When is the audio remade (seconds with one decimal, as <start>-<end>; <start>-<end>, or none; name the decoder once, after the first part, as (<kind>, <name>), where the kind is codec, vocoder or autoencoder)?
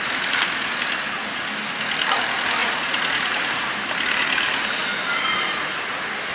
2.6-3.3 (vocoder, Vocos)